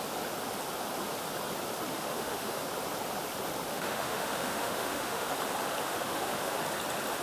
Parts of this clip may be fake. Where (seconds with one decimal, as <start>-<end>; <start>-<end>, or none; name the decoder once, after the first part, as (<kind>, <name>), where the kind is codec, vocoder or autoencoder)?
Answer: 1.9-2.6 (autoencoder, DAC-VAE); 3.7-5.3; 5.8-6.6